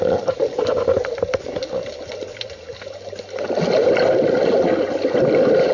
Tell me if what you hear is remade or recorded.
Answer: recorded